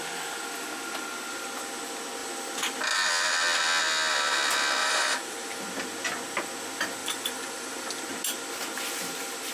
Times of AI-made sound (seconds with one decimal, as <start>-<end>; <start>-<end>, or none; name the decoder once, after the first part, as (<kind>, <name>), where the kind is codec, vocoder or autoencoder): 4.8-5.6 (vocoder, BigVGAN v2); 7.0-8.0